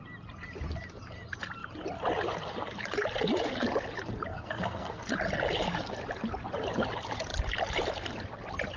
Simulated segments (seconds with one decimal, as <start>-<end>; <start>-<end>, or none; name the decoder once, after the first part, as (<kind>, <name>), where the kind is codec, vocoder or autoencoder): 4.3-5.1 (codec, SNAC)